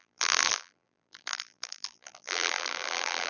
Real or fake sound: fake